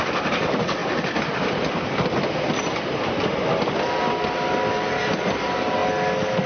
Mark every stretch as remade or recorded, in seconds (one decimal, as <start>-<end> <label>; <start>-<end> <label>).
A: 0.0-6.5 recorded